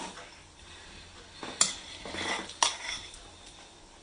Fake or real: real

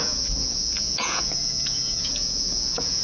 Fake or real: fake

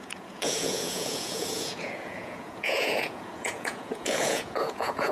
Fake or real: fake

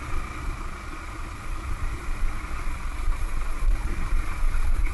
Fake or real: fake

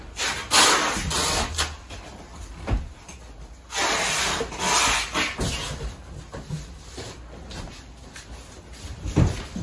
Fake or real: real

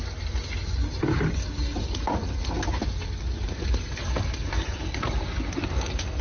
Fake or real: real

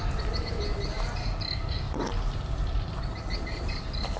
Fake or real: real